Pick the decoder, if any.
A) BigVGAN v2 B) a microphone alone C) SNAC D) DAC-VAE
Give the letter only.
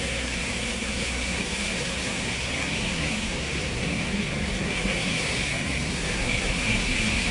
C